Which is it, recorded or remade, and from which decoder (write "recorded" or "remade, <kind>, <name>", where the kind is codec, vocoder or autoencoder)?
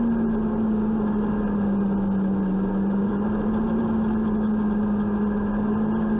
recorded